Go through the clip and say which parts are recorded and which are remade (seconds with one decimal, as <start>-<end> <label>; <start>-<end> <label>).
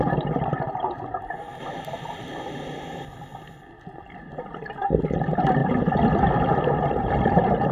0.0-1.5 remade; 1.5-4.0 recorded; 4.0-5.6 remade; 5.6-7.2 recorded; 7.2-7.7 remade